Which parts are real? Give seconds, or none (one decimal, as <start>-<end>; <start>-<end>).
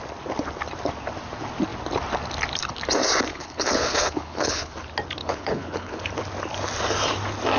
0.0-3.3; 4.7-5.2; 6.0-7.6